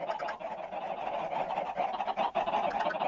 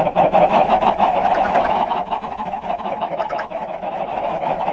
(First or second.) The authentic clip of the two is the first